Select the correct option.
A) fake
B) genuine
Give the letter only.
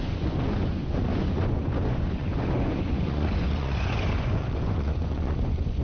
A